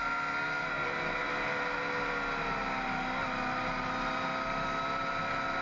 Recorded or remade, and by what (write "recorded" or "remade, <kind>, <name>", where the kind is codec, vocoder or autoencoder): recorded